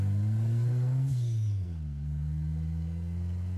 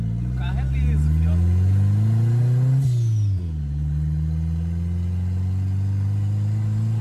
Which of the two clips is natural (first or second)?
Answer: second